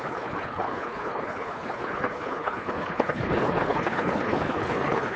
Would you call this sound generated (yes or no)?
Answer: yes